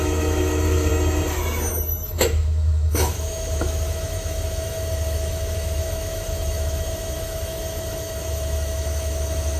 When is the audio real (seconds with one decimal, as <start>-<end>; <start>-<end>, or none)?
0.9-1.7